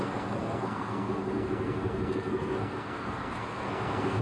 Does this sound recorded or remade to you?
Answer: remade